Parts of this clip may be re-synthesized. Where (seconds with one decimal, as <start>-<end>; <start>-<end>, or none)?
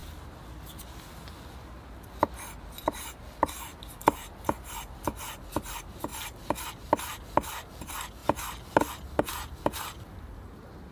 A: none